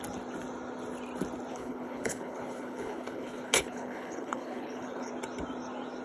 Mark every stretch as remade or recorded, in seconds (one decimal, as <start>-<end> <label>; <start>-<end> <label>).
0.0-1.5 recorded; 1.5-5.1 remade; 5.1-6.0 recorded